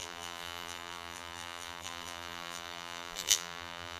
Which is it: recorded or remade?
remade